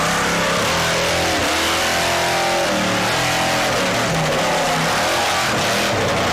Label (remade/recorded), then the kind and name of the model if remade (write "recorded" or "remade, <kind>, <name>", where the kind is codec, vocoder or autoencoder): recorded